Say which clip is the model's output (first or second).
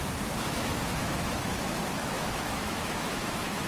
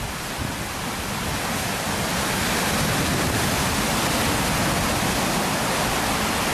first